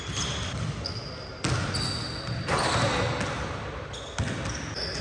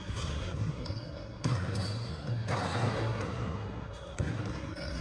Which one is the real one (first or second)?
first